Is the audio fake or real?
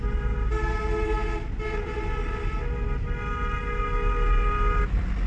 real